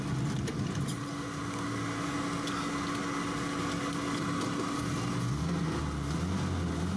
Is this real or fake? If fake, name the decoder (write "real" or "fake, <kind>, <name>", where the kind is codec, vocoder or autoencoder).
real